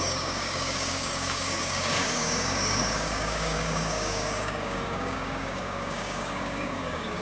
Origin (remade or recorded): remade